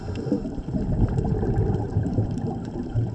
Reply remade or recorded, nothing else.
remade